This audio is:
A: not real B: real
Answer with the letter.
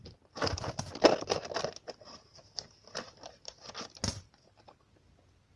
B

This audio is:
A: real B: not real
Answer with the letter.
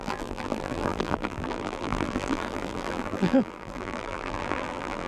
B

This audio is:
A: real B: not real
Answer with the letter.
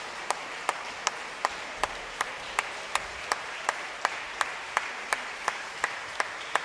B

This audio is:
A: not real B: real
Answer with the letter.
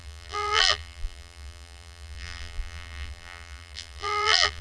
A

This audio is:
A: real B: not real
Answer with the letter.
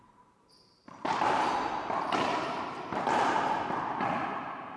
B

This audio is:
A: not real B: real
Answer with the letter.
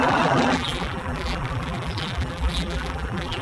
A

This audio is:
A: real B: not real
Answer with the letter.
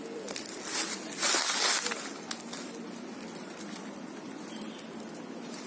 A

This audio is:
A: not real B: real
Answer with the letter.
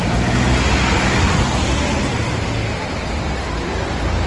B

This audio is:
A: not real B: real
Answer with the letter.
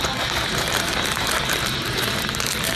A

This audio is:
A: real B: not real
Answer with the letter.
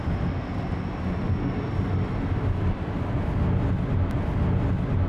A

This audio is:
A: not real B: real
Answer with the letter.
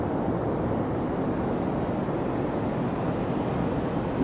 B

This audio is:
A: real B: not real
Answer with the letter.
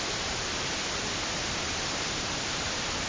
A